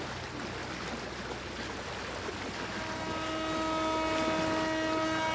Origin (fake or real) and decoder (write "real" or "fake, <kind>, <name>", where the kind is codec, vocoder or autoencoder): real